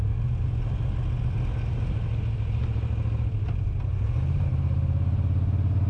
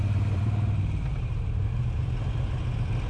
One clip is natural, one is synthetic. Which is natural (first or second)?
first